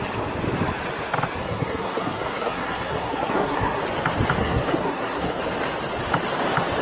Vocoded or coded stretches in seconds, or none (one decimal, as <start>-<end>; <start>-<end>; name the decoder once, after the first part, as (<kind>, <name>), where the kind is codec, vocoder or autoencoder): 1.4-3.8 (codec, SNAC); 4.4-5.4